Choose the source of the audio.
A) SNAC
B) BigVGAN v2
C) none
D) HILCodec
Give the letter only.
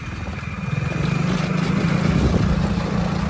C